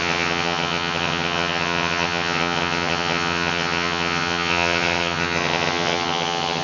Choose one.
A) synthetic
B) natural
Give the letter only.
A